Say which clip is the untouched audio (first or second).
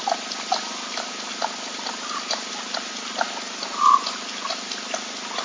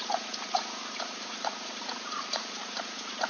first